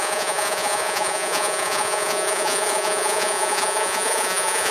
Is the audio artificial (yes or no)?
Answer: yes